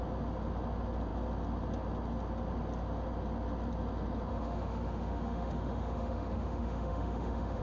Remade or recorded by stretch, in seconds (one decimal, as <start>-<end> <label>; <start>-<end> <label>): 0.0-4.3 recorded; 4.3-7.6 remade